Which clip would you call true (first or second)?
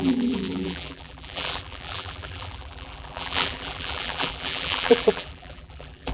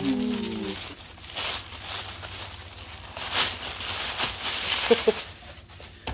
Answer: second